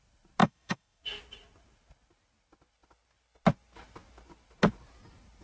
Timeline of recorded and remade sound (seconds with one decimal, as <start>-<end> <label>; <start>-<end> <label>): 0.0-0.4 recorded; 0.4-1.0 remade; 1.0-5.4 recorded